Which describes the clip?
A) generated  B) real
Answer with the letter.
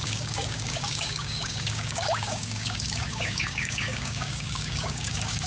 A